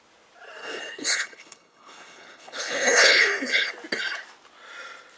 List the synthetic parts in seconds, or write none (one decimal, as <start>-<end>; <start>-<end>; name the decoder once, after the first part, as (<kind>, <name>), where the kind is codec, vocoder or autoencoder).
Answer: 0.6-3.7 (codec, HILCodec)

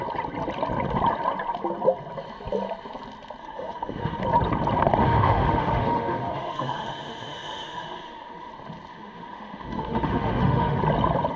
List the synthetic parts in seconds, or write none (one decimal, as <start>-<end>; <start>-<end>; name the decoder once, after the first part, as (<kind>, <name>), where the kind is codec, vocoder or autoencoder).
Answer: 3.4-4.2 (autoencoder, DAC-VAE); 5.0-8.5; 8.9-10.8